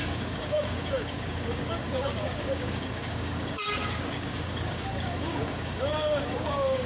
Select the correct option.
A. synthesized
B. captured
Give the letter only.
A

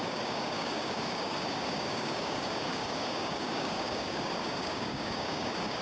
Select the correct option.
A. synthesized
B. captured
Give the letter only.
A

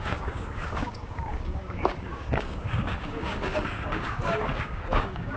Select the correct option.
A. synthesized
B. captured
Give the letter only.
A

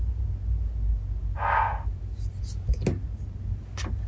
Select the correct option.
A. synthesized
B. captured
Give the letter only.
B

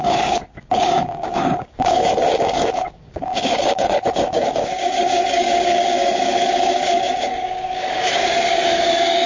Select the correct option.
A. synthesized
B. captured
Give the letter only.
A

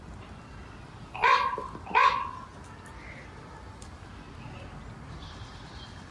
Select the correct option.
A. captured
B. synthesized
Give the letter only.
A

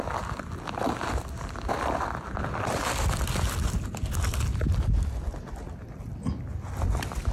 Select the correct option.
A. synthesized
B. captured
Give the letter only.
B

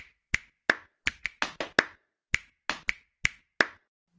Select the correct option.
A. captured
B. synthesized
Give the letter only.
A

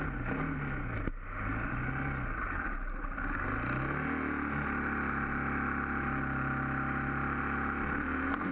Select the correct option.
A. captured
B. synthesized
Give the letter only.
A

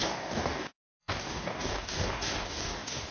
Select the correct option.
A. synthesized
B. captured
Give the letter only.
A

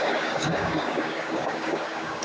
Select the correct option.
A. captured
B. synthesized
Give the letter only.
B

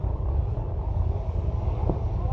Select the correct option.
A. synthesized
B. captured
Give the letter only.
A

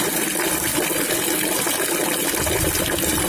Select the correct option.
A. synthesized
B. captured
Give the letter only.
B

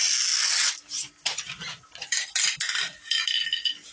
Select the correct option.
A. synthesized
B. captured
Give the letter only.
B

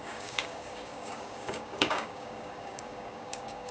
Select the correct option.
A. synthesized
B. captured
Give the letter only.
A